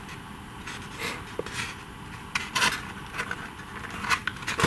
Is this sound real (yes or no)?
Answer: yes